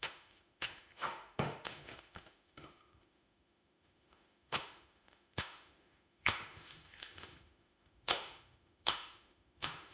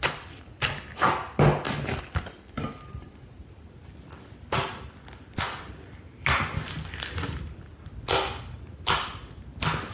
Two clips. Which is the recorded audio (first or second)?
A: second